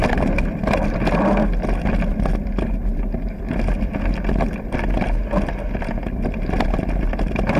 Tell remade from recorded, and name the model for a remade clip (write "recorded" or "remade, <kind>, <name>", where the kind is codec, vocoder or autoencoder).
recorded